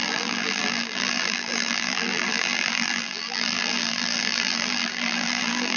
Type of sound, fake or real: fake